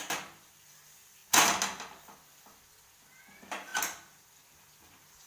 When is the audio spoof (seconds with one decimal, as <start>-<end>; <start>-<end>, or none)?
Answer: none